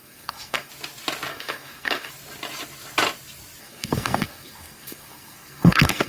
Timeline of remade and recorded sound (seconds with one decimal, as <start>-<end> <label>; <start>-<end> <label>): 0.0-0.7 remade; 0.7-1.3 recorded; 1.3-2.1 remade; 2.1-3.6 recorded; 3.6-6.1 remade